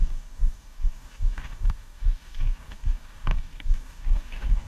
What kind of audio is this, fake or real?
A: fake